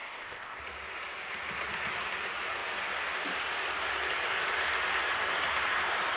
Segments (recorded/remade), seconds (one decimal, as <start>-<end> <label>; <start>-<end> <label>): 0.0-0.6 remade; 0.6-6.2 recorded